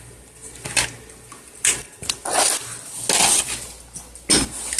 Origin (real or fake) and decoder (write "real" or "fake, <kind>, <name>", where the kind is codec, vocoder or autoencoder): real